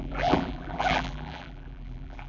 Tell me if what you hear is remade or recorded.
remade